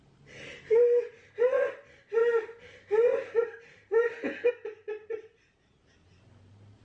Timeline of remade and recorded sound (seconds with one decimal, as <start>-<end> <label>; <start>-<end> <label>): 0.0-2.2 recorded; 2.2-4.5 remade; 4.5-6.8 recorded